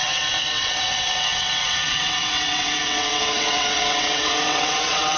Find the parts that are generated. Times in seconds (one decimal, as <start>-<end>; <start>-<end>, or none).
0.0-5.2